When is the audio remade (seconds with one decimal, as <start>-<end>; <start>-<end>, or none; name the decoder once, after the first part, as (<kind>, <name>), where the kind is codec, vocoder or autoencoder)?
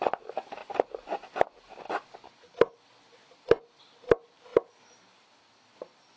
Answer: none